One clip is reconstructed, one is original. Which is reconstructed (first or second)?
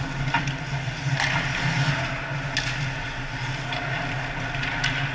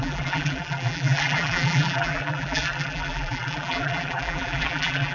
second